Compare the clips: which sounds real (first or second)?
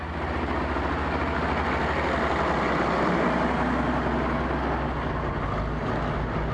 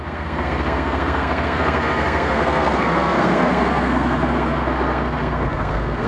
first